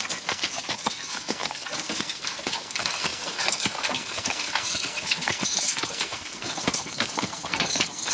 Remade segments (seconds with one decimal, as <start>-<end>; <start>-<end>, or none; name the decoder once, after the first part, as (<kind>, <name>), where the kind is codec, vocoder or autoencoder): 0.0-8.1 (codec, SNAC)